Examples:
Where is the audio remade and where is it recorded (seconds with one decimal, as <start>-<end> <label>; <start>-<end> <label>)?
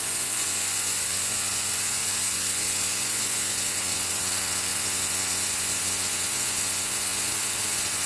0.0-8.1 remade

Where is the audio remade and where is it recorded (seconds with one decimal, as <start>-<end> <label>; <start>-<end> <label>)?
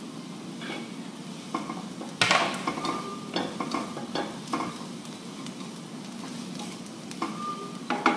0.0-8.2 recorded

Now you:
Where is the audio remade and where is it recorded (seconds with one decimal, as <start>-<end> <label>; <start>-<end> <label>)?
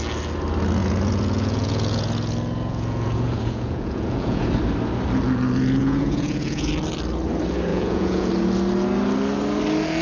0.0-0.8 recorded; 0.8-4.5 remade; 4.5-5.8 recorded; 5.8-6.7 remade; 6.7-7.7 recorded; 7.7-8.3 remade; 8.3-10.0 recorded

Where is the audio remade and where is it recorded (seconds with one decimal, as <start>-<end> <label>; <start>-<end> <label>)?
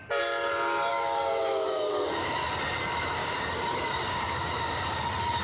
0.0-0.9 recorded; 0.9-1.9 remade; 1.9-3.2 recorded; 3.2-4.5 remade; 4.5-5.4 recorded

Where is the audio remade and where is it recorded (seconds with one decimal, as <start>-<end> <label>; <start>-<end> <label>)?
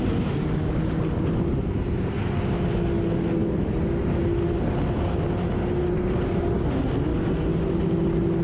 0.0-8.4 recorded